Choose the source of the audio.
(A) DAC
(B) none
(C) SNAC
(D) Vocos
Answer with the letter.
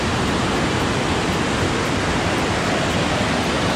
B